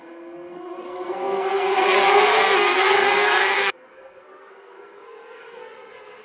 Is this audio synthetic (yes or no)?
yes